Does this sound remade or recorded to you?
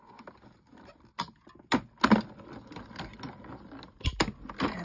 recorded